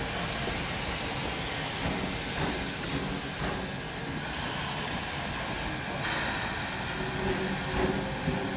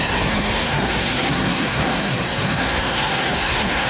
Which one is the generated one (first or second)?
second